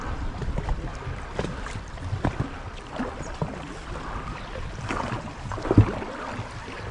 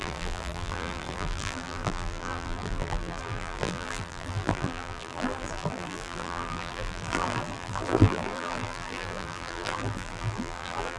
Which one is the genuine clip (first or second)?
first